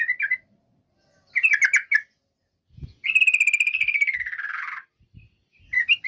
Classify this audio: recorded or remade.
recorded